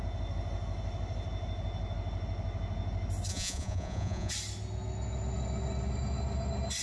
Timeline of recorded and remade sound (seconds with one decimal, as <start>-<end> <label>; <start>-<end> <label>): 0.0-3.3 recorded; 3.3-4.3 remade; 4.3-6.8 recorded